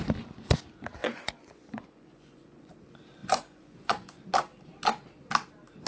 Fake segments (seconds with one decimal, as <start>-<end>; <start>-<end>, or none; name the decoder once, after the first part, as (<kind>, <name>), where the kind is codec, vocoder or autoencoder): 1.0-2.7 (vocoder, Vocos); 3.2-4.2